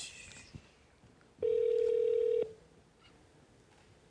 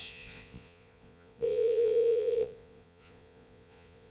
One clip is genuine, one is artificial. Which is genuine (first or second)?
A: first